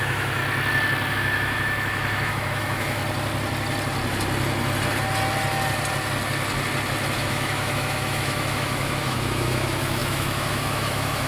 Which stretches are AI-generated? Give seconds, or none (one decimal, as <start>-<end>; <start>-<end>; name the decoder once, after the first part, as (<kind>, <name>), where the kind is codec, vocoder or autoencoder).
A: 0.0-0.4 (autoencoder, DAC-VAE); 1.1-3.0; 7.2-11.3